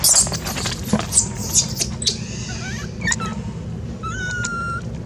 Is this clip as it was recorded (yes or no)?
yes